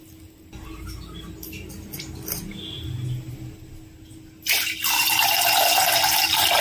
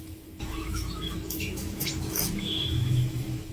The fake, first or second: second